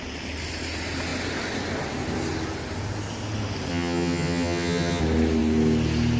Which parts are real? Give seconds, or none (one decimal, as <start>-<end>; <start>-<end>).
0.0-3.7; 5.0-6.2